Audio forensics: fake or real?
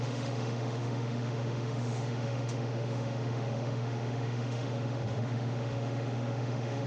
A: fake